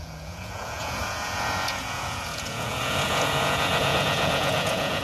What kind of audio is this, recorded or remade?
remade